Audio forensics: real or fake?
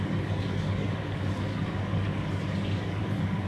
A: fake